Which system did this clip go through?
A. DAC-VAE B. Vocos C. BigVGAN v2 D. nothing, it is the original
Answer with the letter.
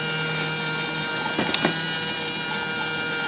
D